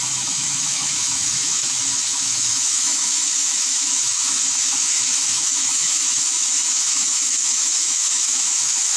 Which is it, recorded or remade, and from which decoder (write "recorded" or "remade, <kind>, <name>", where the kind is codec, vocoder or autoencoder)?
remade, autoencoder, DAC-VAE